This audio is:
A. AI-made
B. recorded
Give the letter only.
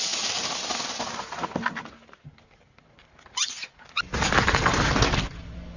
B